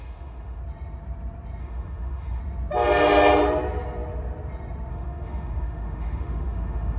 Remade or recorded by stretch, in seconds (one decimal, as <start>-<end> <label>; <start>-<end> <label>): 0.0-0.6 remade; 0.6-1.6 recorded; 1.6-2.4 remade; 2.4-4.9 recorded; 4.9-7.0 remade